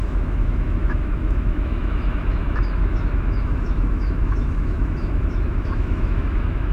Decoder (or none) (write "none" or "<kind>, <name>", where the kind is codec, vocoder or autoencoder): autoencoder, DAC-VAE